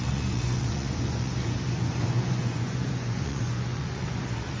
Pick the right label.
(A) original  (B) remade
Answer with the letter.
B